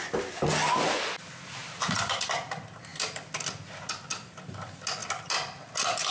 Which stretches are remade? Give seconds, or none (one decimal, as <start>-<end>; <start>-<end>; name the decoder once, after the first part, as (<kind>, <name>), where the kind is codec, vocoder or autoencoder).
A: none